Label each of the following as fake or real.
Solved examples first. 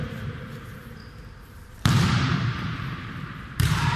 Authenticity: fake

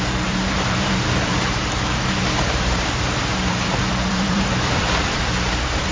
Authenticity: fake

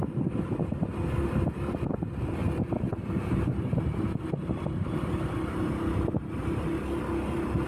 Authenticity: fake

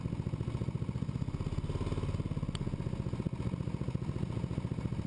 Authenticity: real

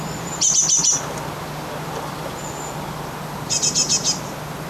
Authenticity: real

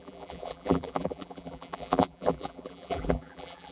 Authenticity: fake